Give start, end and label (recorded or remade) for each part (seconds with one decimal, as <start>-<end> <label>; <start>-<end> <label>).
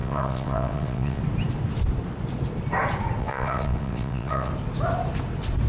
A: 0.0-1.2 remade; 1.2-3.2 recorded; 3.2-4.5 remade; 4.5-5.7 recorded